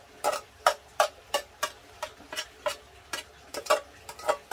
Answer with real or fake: fake